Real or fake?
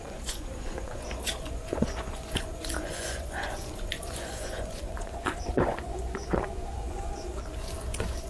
fake